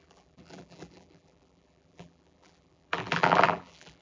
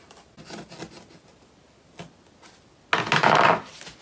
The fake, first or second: first